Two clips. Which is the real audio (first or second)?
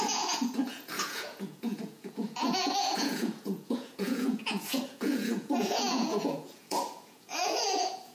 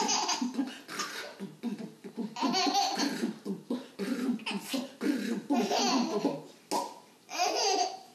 second